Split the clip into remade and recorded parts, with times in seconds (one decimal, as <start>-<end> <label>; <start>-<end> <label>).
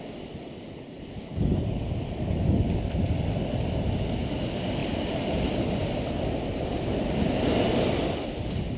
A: 0.0-8.8 recorded